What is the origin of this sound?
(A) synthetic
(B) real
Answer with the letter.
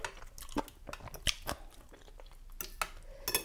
B